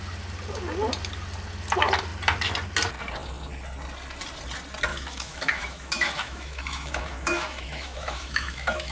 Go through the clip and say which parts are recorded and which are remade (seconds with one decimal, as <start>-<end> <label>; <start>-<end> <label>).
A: 0.0-4.9 recorded; 4.9-8.9 remade